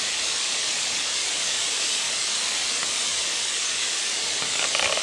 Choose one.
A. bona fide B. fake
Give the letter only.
B